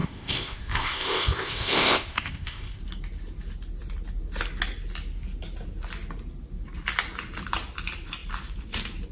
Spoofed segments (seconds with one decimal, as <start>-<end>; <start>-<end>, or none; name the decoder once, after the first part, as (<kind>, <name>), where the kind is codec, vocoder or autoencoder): 0.0-2.8 (codec, ZipCodec)